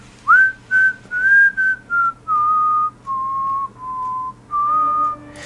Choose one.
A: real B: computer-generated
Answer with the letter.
A